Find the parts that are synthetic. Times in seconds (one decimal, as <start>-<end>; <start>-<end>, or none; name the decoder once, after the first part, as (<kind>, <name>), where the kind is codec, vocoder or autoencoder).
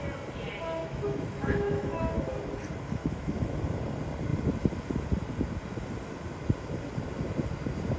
0.8-2.0 (autoencoder, DAC-VAE); 3.0-3.6